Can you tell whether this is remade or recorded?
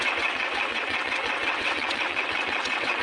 remade